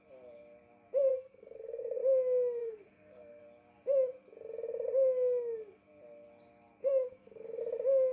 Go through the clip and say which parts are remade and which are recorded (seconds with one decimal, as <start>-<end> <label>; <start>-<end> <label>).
0.0-1.1 recorded; 1.1-2.0 remade; 2.0-2.6 recorded; 2.6-3.4 remade; 3.4-6.8 recorded; 6.8-7.6 remade; 7.6-8.1 recorded